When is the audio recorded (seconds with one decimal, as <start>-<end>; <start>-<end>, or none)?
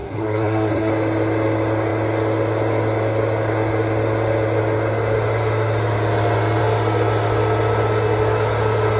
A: 0.9-9.0